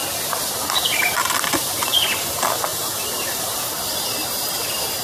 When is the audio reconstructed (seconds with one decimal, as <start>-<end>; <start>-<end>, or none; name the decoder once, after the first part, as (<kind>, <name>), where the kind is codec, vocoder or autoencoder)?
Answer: 2.7-3.6 (vocoder, BigVGAN v2)

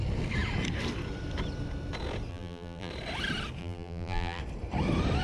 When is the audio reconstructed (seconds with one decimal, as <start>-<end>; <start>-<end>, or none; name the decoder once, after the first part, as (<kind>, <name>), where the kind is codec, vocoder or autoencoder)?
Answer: 2.3-2.9 (vocoder, BigVGAN v2); 3.6-4.4